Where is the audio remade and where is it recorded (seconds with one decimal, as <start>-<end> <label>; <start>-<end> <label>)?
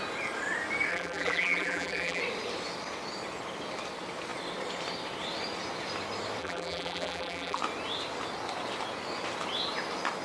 0.0-0.9 recorded; 0.9-2.2 remade; 2.2-6.4 recorded; 6.4-7.6 remade; 7.6-10.2 recorded